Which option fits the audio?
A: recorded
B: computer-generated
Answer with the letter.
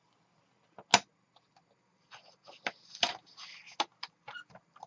A